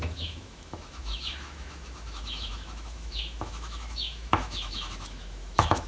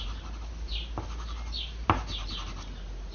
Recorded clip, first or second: second